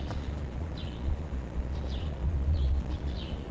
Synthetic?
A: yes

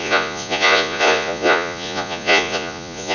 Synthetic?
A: yes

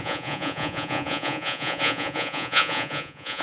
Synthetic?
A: yes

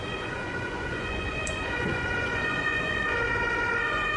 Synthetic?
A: yes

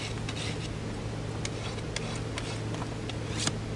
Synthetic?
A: no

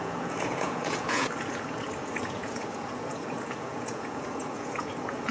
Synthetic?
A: yes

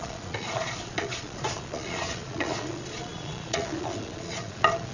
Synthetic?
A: yes